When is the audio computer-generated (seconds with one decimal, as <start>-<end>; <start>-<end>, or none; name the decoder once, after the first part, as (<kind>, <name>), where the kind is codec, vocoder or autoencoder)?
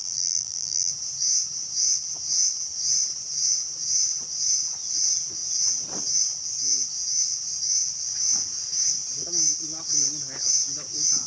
0.0-0.9 (vocoder, BigVGAN v2)